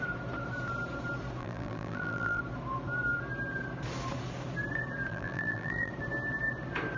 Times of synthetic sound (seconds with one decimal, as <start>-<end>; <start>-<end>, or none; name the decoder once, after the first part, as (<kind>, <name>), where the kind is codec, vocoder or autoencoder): 1.4-2.4 (vocoder, BigVGAN v2); 5.1-5.9